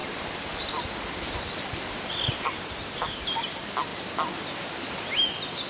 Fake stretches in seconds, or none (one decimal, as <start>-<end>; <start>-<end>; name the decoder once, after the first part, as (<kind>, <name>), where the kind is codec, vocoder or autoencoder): none